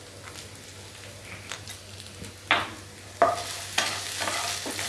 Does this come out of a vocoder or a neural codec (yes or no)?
no